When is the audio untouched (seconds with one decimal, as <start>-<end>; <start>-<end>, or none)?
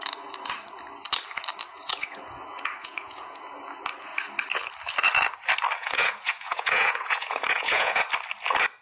0.0-1.7; 2.2-2.8; 3.4-5.8; 8.1-8.8